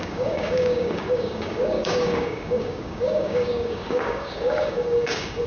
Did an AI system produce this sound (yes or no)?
yes